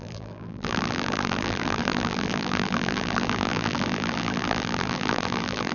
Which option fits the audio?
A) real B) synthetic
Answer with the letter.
B